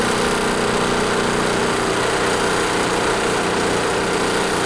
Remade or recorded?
recorded